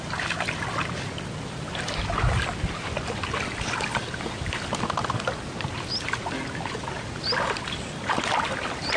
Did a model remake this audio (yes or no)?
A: no